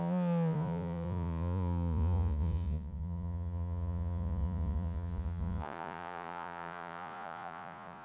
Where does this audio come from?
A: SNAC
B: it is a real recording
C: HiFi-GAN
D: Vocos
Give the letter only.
D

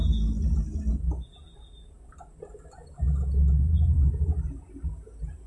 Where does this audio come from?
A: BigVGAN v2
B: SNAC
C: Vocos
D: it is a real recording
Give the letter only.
D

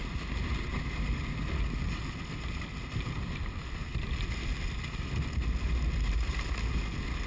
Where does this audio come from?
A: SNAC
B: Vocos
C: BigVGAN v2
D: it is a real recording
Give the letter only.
D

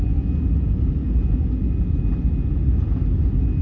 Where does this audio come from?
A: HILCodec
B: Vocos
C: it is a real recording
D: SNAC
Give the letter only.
C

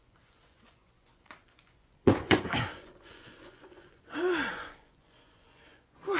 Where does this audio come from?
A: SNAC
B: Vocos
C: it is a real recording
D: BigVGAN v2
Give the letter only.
B